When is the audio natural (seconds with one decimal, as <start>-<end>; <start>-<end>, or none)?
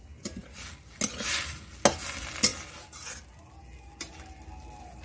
0.0-5.0